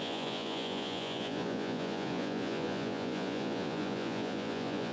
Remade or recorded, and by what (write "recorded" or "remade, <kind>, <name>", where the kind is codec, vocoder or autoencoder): remade, vocoder, Vocos